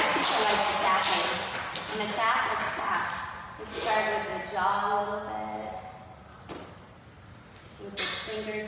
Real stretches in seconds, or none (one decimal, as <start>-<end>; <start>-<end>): 0.0-8.7